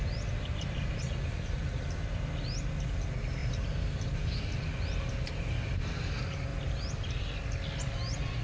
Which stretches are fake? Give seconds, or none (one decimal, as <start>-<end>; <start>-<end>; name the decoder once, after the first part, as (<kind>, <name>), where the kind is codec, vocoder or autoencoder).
3.4-4.3 (vocoder, BigVGAN v2); 6.5-7.3